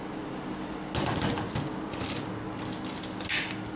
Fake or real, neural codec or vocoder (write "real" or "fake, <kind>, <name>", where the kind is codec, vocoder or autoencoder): real